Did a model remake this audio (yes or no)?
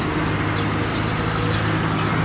no